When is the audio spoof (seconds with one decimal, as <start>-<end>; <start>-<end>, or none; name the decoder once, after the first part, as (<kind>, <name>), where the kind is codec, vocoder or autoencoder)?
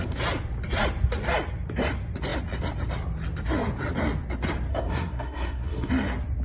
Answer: 4.7-5.9 (codec, SNAC)